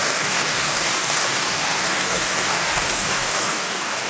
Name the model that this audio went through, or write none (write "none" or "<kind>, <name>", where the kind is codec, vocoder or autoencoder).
codec, DAC